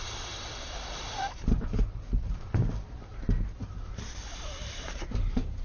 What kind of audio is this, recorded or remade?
remade